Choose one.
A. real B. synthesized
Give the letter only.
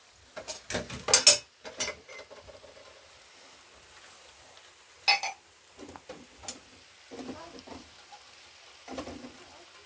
A